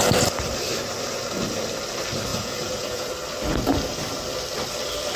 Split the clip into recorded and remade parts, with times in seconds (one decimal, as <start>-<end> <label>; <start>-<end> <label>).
0.0-2.3 recorded; 2.3-3.1 remade; 3.1-5.2 recorded